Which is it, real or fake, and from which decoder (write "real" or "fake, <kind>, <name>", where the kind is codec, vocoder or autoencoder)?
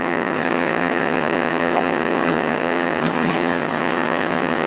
fake, vocoder, HiFi-GAN